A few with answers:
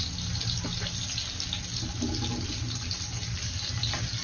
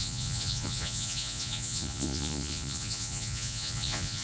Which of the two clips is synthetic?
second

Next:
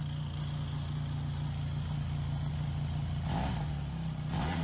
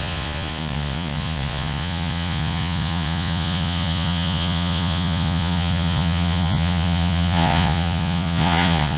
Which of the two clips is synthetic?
second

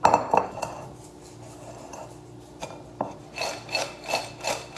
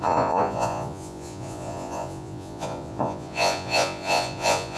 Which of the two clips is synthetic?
second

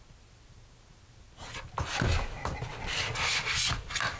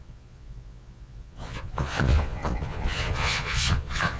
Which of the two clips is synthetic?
second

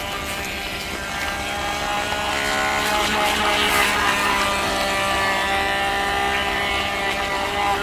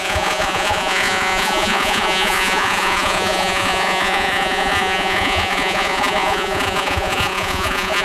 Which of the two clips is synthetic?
second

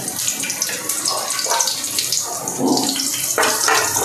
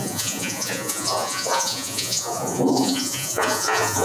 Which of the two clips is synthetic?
second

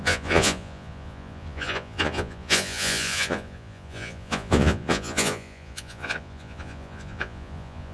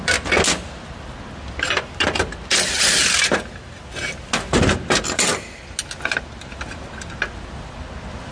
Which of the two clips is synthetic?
first